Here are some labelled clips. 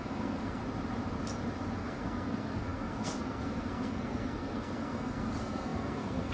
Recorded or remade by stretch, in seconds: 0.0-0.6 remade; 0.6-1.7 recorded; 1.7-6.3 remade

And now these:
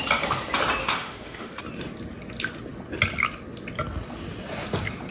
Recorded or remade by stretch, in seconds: 0.0-0.8 recorded; 0.8-1.5 remade; 1.5-5.1 recorded

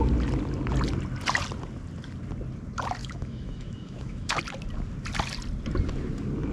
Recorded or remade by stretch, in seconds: 0.0-3.0 recorded; 3.0-4.4 remade; 4.4-6.5 recorded

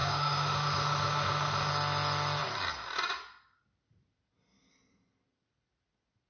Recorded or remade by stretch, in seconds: 0.0-1.7 remade; 1.7-6.3 recorded

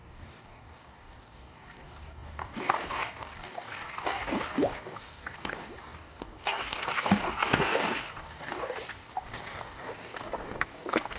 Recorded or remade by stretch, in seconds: 0.0-11.2 remade

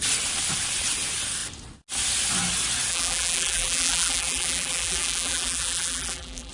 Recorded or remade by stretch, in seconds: 0.0-2.9 recorded; 2.9-6.5 remade

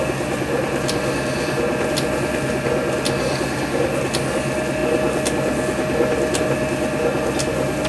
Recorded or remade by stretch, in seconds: 0.0-7.9 recorded

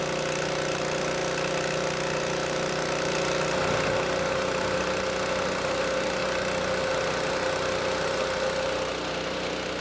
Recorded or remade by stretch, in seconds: 0.0-9.8 recorded